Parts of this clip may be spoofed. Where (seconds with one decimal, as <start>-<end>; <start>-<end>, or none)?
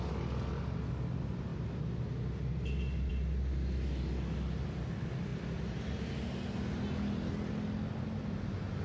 none